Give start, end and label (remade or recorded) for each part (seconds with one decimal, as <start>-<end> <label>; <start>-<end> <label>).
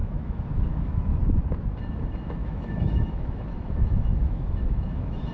0.0-1.2 remade; 1.2-2.4 recorded; 2.4-5.3 remade